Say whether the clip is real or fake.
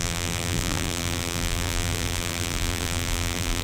fake